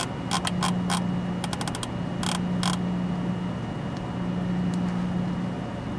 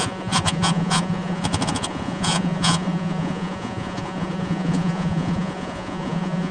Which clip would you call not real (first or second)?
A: second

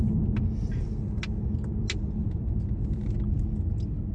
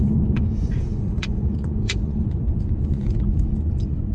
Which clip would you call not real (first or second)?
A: second